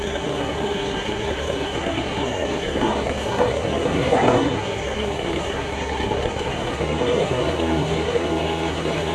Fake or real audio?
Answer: fake